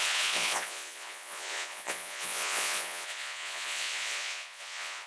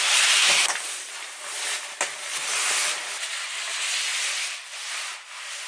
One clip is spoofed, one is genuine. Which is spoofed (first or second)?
first